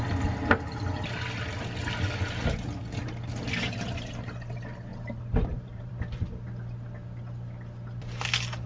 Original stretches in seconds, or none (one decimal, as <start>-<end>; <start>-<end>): 0.0-4.9; 5.9-8.7